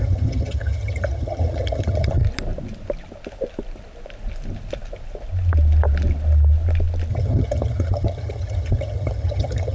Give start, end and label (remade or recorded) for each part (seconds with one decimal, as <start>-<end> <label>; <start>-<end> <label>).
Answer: 0.0-2.2 remade; 2.2-7.1 recorded; 7.1-9.7 remade